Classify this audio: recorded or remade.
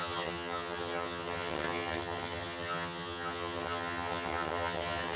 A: remade